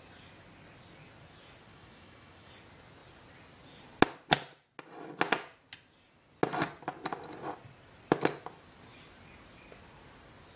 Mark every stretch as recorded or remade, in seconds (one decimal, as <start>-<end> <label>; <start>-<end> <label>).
0.0-1.7 recorded; 1.7-2.5 remade; 2.5-10.6 recorded